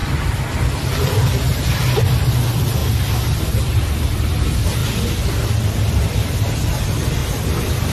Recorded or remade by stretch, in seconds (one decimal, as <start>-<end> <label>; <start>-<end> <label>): 0.0-7.9 remade